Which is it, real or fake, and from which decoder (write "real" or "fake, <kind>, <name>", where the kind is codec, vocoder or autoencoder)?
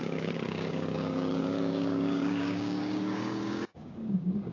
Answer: fake, codec, DAC